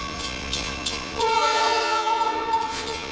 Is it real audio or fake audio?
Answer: fake